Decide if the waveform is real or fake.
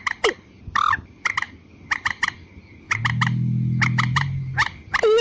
real